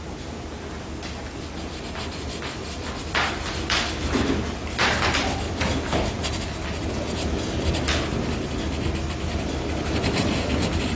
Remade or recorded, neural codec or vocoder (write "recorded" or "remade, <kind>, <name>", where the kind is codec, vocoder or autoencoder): recorded